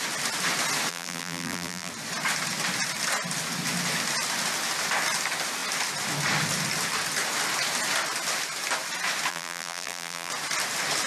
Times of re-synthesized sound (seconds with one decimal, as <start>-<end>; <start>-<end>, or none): 0.9-1.9; 9.3-10.3